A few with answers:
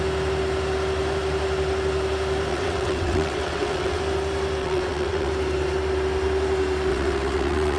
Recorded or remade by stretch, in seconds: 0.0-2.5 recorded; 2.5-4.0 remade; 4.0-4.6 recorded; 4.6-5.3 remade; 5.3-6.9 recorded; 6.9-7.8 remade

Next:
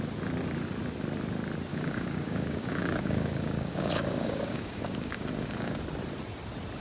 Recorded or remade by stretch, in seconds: 0.0-1.7 recorded; 1.7-5.8 remade; 5.8-6.8 recorded

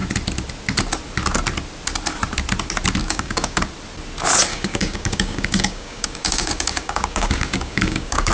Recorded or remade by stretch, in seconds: 0.0-3.0 recorded; 3.0-3.7 remade; 3.7-4.5 recorded; 4.5-8.3 remade

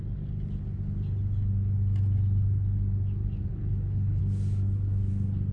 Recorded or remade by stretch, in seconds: 0.0-3.5 recorded; 3.5-4.2 remade; 4.2-5.5 recorded